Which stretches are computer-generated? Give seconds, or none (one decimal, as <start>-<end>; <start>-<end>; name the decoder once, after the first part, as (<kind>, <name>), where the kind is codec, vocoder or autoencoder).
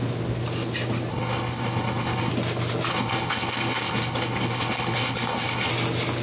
1.1-2.3 (codec, HILCodec); 2.9-5.7